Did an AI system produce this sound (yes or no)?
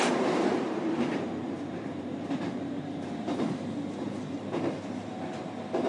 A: yes